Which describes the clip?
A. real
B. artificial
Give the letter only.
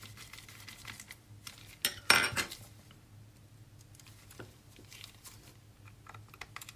A